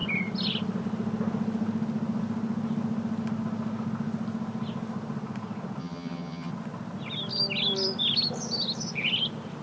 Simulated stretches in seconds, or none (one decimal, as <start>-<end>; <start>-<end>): 5.8-6.5